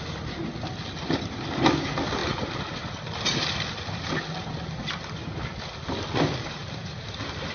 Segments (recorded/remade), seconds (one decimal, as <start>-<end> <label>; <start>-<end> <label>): 0.0-2.2 recorded; 2.2-5.4 remade; 5.4-6.6 recorded; 6.6-7.5 remade

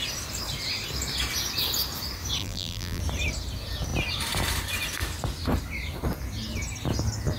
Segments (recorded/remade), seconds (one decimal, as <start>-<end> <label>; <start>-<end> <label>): 0.0-2.4 recorded; 2.4-3.0 remade; 3.0-7.4 recorded

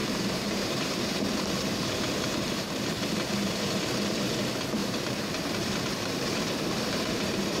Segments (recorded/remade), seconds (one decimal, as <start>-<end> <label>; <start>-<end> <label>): 0.0-3.9 remade; 3.9-4.8 recorded; 4.8-7.6 remade

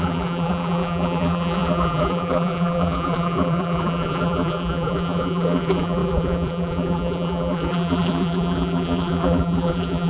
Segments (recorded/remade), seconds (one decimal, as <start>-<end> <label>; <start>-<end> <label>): 0.0-10.1 remade

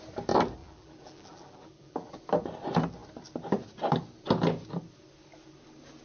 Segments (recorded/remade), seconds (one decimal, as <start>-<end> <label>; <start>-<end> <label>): 0.0-0.6 recorded; 0.6-2.2 remade; 2.2-6.0 recorded

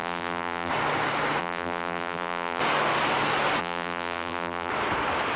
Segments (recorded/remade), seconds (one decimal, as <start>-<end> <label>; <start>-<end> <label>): 0.0-0.7 remade; 0.7-1.4 recorded; 1.4-2.6 remade; 2.6-3.6 recorded; 3.6-4.7 remade; 4.7-5.4 recorded

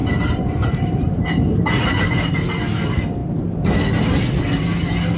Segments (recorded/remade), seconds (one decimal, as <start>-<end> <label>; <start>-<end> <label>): 0.0-2.0 remade; 2.0-5.2 recorded